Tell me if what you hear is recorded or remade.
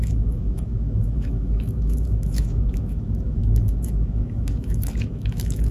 remade